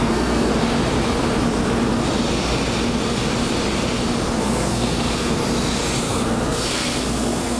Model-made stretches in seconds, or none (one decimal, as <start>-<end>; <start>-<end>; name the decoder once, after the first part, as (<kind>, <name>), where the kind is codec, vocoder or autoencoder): 0.0-0.5 (codec, SNAC); 4.4-5.4; 6.0-7.6